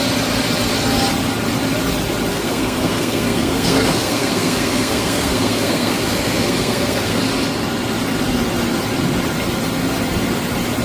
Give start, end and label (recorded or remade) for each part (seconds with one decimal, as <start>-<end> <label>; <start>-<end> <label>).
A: 0.0-2.3 recorded; 2.3-7.2 remade; 7.2-10.8 recorded